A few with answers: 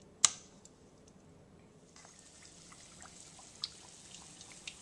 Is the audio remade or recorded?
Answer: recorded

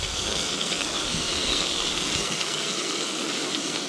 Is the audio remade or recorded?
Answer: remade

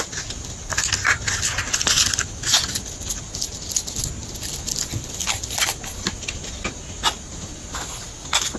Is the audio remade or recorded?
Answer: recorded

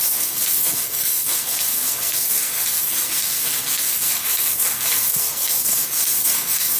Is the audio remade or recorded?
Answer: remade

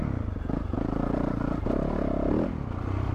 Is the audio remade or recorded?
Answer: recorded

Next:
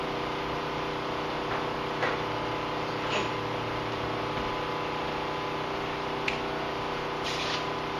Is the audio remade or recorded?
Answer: recorded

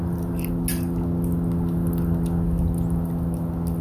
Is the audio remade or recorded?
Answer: recorded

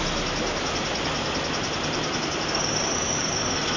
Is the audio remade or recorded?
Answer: recorded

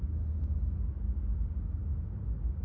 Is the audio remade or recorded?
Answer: recorded